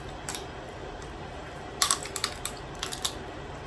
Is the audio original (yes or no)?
yes